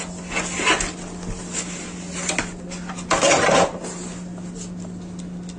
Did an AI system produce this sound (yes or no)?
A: no